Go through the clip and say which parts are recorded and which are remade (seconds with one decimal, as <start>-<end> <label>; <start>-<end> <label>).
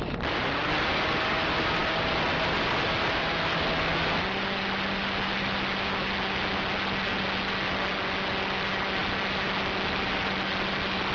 0.0-11.1 recorded